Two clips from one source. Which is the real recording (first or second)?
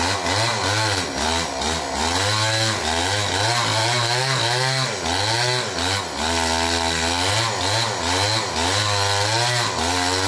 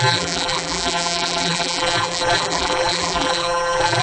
first